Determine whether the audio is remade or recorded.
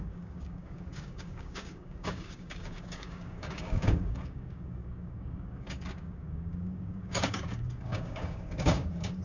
remade